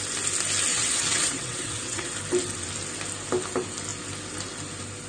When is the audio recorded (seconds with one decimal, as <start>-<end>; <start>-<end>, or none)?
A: 0.0-0.7; 2.1-5.1